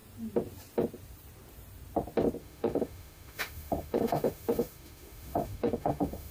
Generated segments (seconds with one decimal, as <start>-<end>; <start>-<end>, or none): 2.4-6.3